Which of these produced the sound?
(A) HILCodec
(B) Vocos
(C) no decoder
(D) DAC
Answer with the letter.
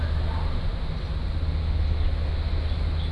C